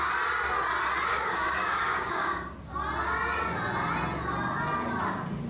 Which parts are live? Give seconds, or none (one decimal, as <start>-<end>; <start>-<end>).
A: 0.0-1.1; 2.7-5.5